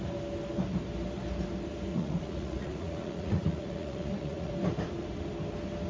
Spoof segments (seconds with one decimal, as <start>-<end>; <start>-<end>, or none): 1.9-4.5